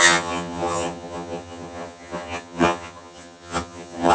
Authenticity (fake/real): fake